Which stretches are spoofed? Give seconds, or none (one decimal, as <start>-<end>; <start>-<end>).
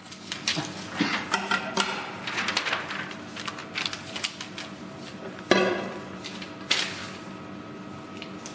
none